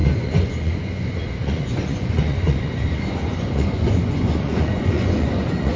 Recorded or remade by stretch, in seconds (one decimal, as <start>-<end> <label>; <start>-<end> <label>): 0.0-5.8 remade